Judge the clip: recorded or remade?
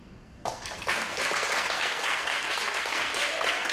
remade